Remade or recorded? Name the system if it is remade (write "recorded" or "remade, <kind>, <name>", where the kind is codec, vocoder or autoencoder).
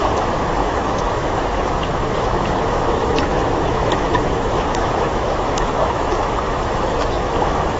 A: remade, autoencoder, DAC-VAE